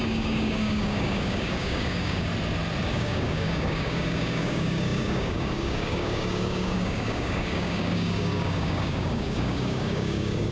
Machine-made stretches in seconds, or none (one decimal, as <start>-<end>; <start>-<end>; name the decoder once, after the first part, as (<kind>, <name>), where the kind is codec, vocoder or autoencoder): 0.0-2.3 (codec, DAC); 2.9-10.5